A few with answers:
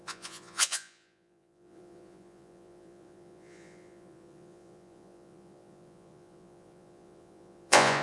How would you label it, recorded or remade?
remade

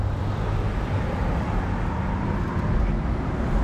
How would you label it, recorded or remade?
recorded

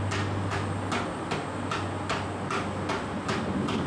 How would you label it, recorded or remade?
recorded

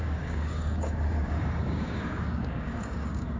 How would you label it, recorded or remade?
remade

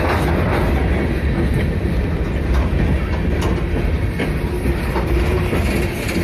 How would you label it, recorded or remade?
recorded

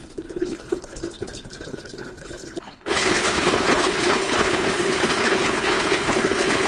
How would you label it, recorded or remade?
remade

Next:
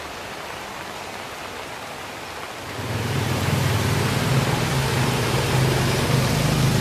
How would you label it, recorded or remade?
recorded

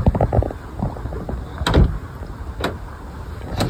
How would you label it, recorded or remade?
recorded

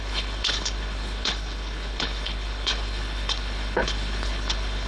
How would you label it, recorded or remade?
remade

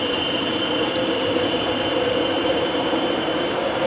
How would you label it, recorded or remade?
remade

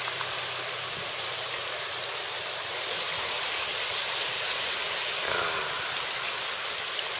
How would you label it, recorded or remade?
recorded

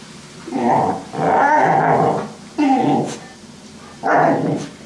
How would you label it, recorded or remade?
recorded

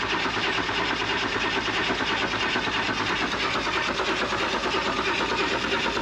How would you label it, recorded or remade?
recorded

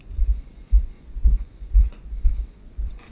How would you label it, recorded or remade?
remade